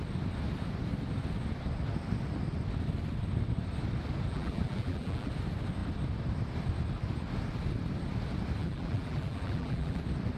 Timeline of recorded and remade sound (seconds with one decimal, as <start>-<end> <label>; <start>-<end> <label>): 0.0-4.3 recorded; 4.3-5.3 remade; 5.3-8.6 recorded; 8.6-10.0 remade; 10.0-10.4 recorded